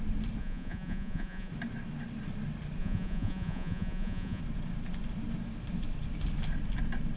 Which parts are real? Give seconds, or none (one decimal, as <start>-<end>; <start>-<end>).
0.0-0.4; 1.5-2.8; 4.4-7.2